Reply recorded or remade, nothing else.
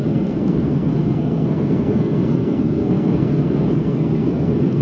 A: remade